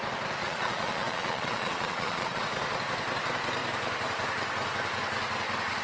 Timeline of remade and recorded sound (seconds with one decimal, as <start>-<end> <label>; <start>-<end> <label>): 0.0-0.4 recorded; 0.4-2.4 remade; 2.4-5.8 recorded